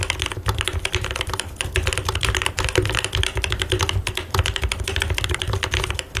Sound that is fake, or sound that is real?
real